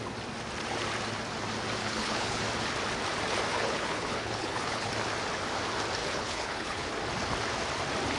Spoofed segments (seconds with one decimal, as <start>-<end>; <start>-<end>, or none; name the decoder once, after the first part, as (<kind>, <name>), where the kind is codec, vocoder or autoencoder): 1.8-2.4 (codec, HILCodec); 3.5-4.9; 6.0-6.9